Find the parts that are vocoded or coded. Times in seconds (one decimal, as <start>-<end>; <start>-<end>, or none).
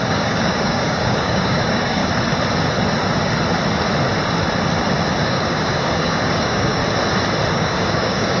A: 0.0-2.0; 5.2-6.8; 7.5-8.4